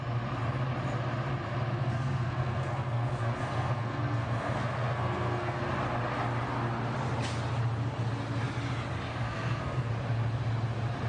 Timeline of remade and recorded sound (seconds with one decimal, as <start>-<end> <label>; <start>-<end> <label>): 0.0-1.8 recorded; 1.8-5.6 remade; 5.6-9.1 recorded; 9.1-9.9 remade; 9.9-11.1 recorded